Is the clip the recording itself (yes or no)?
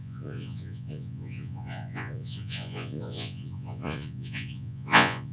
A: no